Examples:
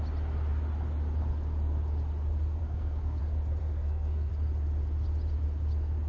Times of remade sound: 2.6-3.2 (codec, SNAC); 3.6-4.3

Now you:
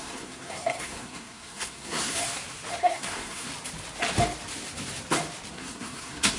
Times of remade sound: 0.0-2.2 (codec, SNAC); 2.8-3.5; 5.5-6.4

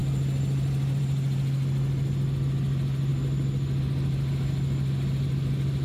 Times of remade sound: none